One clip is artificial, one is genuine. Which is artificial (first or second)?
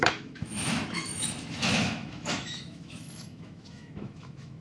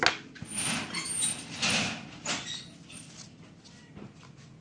first